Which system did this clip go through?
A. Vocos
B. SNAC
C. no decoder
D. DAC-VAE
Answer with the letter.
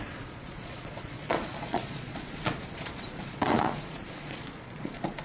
A